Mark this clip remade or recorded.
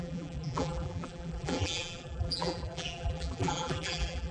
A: remade